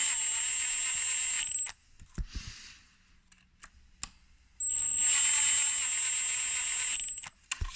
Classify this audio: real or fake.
real